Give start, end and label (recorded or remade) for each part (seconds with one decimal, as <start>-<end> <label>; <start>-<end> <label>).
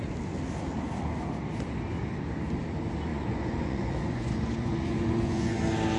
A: 0.0-3.1 recorded; 3.1-5.6 remade; 5.6-6.0 recorded